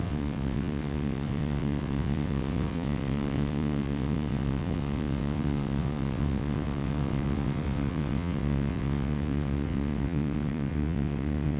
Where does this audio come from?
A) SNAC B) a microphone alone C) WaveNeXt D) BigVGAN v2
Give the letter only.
C